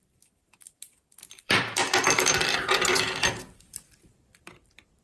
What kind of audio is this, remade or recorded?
remade